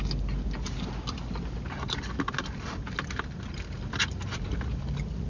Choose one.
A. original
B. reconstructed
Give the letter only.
A